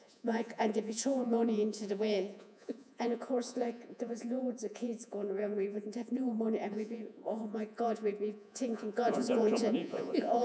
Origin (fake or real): fake